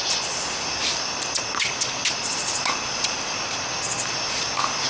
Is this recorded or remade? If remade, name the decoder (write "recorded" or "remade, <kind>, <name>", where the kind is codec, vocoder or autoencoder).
recorded